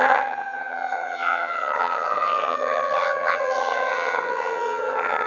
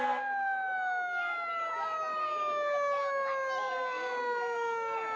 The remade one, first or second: first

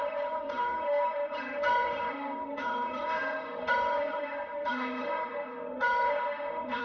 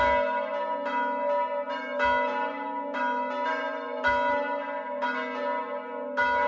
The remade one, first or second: first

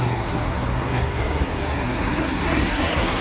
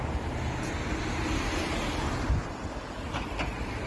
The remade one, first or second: first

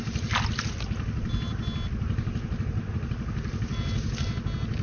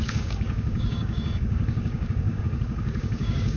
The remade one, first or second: second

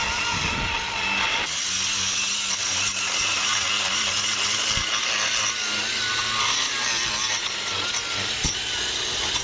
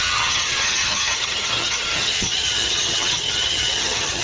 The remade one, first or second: second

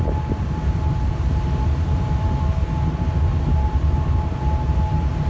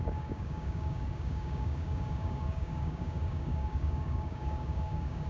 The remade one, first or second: second